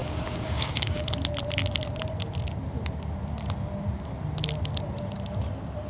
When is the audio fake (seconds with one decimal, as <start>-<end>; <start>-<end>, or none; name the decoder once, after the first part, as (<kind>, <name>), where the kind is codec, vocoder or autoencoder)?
0.0-1.0 (codec, DAC)